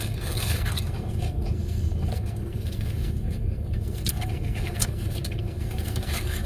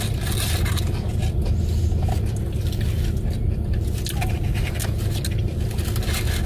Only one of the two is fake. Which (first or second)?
first